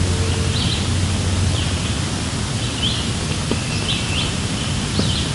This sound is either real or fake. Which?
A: real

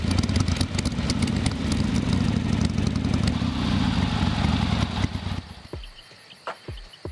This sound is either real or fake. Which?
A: real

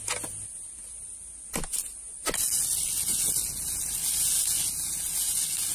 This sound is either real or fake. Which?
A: real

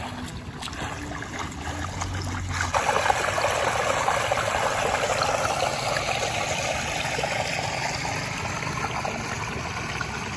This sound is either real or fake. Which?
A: real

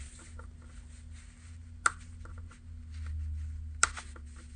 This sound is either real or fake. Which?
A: real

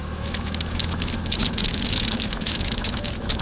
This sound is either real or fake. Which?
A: fake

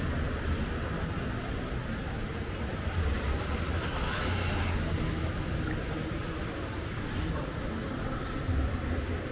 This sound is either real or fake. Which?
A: real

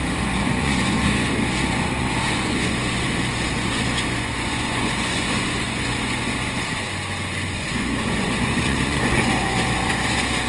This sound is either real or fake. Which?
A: fake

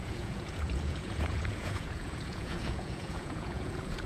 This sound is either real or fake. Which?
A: fake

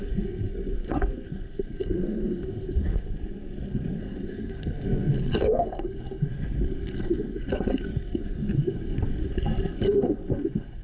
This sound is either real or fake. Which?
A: fake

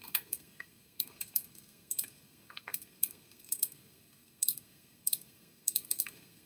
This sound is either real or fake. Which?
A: fake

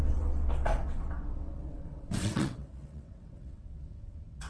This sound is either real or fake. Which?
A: fake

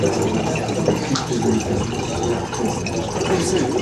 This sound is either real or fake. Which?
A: real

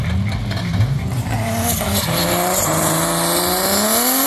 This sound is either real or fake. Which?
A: real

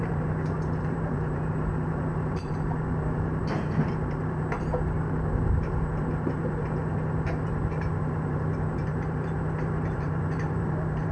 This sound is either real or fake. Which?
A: fake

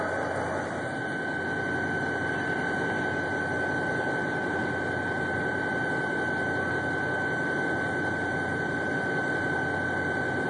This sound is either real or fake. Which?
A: real